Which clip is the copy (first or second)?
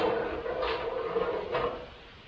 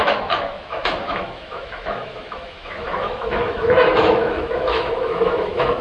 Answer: second